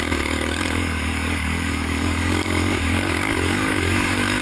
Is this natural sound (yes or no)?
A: no